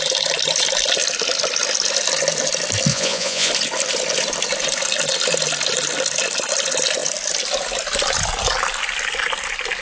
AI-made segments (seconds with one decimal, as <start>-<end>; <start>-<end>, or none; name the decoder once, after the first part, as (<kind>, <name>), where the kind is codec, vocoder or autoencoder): 2.9-3.5 (vocoder, Vocos)